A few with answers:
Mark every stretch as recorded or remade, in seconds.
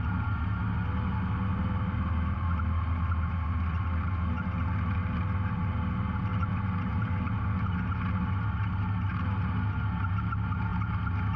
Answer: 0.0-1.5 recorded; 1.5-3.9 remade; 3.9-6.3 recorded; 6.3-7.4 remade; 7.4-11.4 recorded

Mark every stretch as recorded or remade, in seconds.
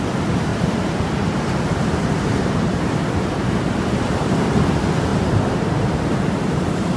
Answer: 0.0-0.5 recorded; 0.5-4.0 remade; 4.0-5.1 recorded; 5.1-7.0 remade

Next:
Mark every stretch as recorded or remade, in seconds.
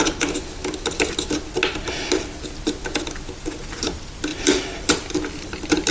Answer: 0.0-4.3 recorded; 4.3-4.9 remade; 4.9-5.9 recorded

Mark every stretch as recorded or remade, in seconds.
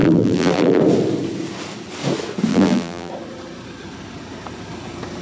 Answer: 0.0-0.8 remade; 0.8-2.5 recorded; 2.5-3.1 remade; 3.1-5.2 recorded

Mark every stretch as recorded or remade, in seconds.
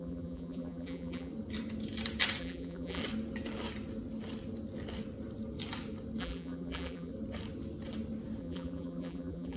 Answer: 0.0-1.3 remade; 1.3-2.4 recorded; 2.4-3.0 remade; 3.0-6.2 recorded; 6.2-7.1 remade; 7.1-8.4 recorded; 8.4-9.6 remade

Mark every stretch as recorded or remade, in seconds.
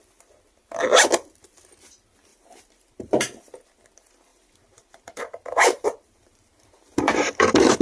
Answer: 0.0-2.3 recorded; 2.3-3.5 remade; 3.5-4.3 recorded; 4.3-7.0 remade; 7.0-7.8 recorded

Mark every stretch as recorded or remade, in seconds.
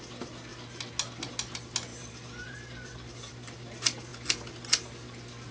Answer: 0.0-1.9 recorded; 1.9-3.3 remade; 3.3-5.5 recorded